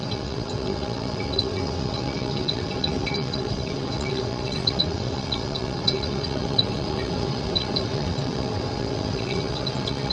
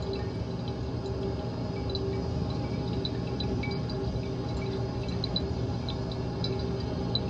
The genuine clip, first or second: second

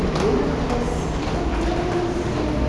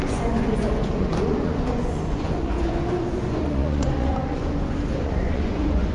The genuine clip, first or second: first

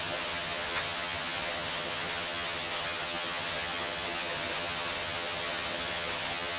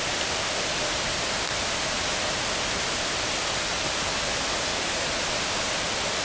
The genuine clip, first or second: second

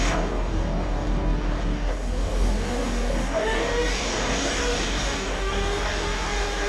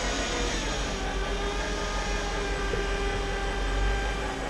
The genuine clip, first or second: second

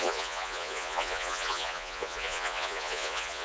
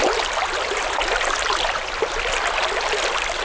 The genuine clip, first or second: second